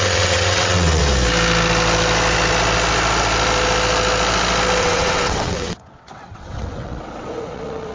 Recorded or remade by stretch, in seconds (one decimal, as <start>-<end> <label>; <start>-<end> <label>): 0.0-1.0 remade; 1.0-4.8 recorded; 4.8-7.9 remade